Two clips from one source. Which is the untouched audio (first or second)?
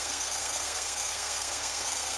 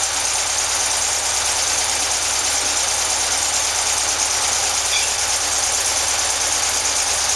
second